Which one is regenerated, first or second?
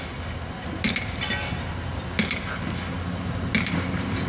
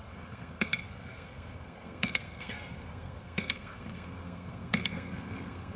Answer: second